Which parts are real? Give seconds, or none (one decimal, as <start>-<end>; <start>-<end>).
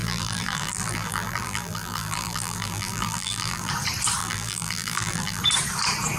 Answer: 3.7-4.2; 5.4-6.2